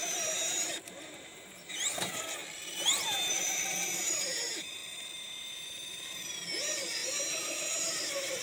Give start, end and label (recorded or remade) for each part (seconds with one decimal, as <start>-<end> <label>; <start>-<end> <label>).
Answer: 0.0-2.4 remade; 2.4-3.0 recorded; 3.0-4.8 remade; 4.8-5.9 recorded; 5.9-7.0 remade; 7.0-7.8 recorded; 7.8-8.4 remade

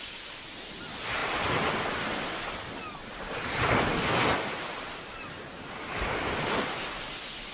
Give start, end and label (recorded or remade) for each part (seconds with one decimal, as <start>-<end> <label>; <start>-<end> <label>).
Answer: 0.0-7.5 recorded